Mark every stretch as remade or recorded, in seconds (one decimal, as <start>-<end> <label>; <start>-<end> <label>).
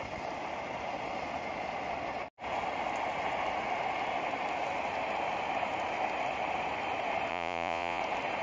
0.0-7.3 recorded; 7.3-8.0 remade; 8.0-8.4 recorded